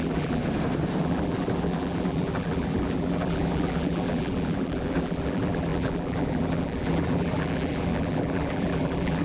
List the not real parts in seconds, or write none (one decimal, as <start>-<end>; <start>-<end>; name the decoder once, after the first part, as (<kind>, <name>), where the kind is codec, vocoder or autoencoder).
0.0-0.4 (vocoder, BigVGAN v2); 1.0-9.2